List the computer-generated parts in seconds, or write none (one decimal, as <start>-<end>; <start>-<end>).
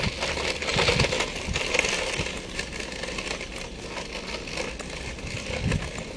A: none